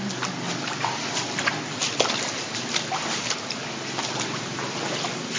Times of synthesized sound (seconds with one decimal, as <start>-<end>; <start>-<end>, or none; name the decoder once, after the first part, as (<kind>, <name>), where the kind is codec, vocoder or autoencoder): none